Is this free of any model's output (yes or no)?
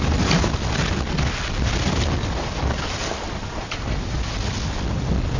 yes